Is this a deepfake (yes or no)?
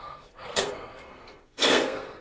yes